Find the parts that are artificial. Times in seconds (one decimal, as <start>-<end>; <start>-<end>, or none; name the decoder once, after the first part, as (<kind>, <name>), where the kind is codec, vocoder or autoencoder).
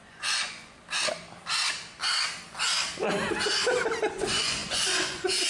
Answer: 0.0-0.8 (vocoder, Vocos); 4.1-5.5